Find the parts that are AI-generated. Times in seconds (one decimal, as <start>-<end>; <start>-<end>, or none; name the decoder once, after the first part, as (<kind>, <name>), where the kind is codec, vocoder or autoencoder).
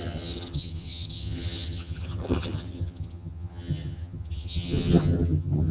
0.0-5.7 (vocoder, HiFi-GAN)